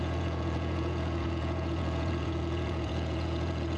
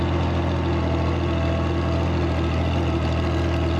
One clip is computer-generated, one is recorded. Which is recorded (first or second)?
second